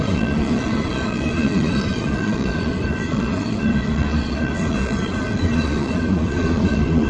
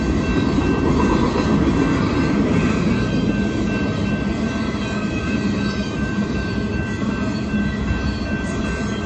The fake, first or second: first